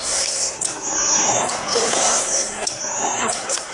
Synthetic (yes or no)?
yes